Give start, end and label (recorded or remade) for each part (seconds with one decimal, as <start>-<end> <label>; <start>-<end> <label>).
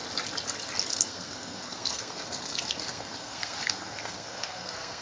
0.0-0.9 recorded; 0.9-5.0 remade